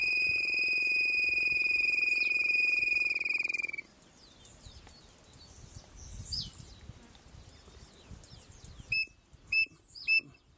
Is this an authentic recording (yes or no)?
yes